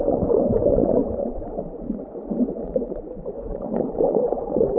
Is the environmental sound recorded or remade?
remade